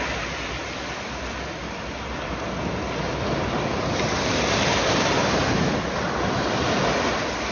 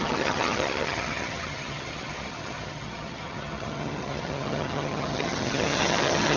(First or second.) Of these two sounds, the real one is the first